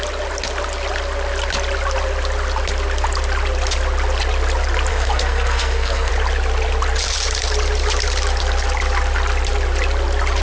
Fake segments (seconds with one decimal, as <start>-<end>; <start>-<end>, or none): 4.9-6.1